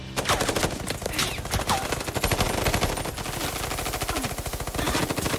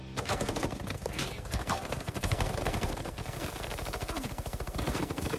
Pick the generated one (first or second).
second